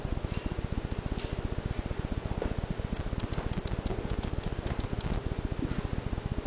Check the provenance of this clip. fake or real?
real